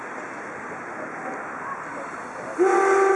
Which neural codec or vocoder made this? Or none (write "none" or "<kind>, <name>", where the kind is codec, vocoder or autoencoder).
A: none